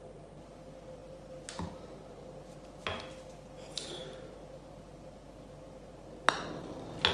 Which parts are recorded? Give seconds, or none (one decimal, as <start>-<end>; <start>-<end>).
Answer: 0.0-7.1